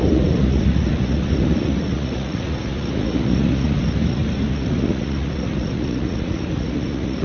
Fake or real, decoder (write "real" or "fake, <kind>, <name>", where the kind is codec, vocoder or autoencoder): fake, vocoder, Vocos